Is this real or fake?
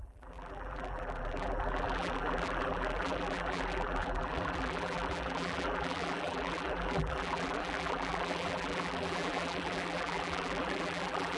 fake